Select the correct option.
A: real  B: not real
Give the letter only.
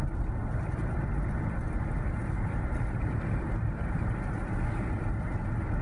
A